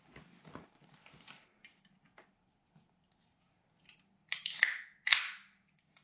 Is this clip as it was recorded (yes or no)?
yes